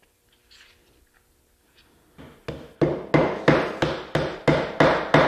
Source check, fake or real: real